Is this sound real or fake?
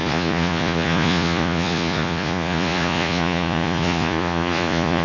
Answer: fake